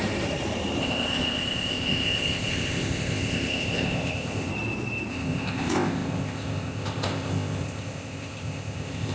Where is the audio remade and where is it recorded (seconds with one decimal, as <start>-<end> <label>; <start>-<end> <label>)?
0.0-0.8 recorded; 0.8-4.5 remade; 4.5-5.1 recorded; 5.1-9.1 remade